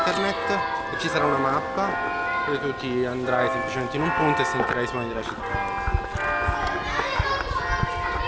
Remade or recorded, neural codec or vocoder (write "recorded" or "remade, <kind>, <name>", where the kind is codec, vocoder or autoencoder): recorded